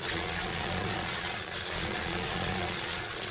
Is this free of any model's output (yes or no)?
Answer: no